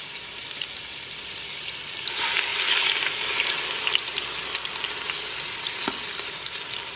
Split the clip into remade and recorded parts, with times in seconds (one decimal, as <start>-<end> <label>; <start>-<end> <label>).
0.0-7.0 recorded